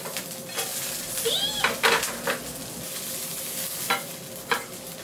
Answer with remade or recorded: recorded